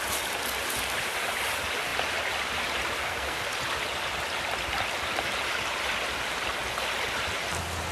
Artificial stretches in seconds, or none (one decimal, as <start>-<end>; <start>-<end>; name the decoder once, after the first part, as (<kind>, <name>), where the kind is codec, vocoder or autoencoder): 3.0-3.5 (codec, SNAC)